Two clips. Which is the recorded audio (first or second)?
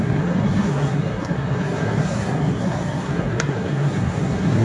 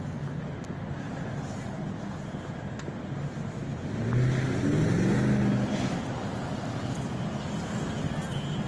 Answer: second